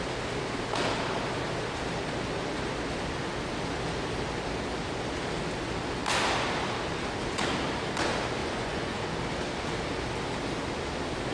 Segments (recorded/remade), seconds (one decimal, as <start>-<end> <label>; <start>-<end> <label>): 0.0-8.4 recorded; 8.4-9.0 remade; 9.0-11.3 recorded